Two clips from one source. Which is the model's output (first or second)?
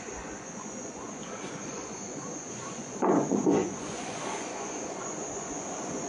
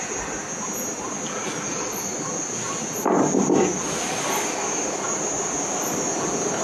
first